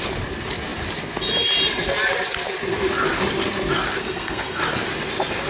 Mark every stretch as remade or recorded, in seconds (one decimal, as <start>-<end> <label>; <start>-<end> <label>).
0.0-4.0 recorded; 4.0-4.6 remade; 4.6-5.5 recorded

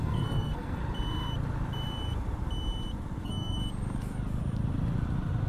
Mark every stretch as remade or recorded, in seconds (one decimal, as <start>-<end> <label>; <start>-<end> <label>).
0.0-0.8 remade; 0.8-3.2 recorded; 3.2-3.6 remade; 3.6-5.5 recorded

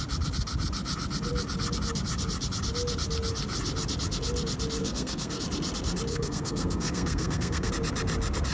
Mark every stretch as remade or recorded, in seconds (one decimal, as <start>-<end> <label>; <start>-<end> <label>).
0.0-4.8 recorded; 4.8-5.4 remade; 5.4-6.1 recorded; 6.1-7.7 remade; 7.7-8.5 recorded

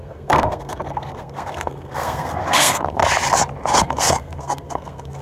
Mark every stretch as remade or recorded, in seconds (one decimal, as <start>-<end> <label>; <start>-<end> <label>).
0.0-3.0 remade; 3.0-3.8 recorded; 3.8-5.2 remade

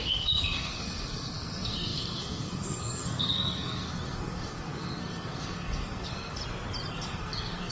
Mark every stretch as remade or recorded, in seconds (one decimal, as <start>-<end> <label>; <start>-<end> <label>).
0.0-6.4 remade; 6.4-6.9 recorded; 6.9-7.7 remade

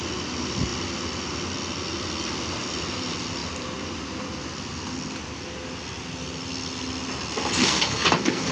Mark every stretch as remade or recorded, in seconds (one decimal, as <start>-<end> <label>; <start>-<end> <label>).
0.0-7.6 recorded; 7.6-8.5 remade

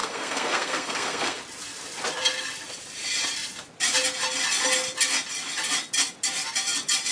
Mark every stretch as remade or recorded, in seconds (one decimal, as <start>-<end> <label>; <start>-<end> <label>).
0.0-1.4 remade; 1.4-7.1 recorded